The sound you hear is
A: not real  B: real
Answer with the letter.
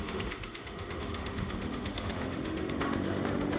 A